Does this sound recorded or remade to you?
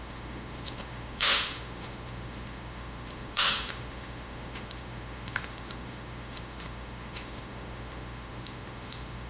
remade